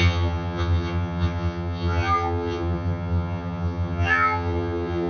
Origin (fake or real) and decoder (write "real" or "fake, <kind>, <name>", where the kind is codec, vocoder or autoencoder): fake, vocoder, HiFi-GAN